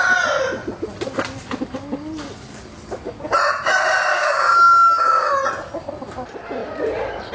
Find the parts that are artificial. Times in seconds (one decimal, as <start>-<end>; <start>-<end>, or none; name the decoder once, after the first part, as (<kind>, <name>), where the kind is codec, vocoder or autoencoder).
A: 4.1-5.3 (codec, DAC)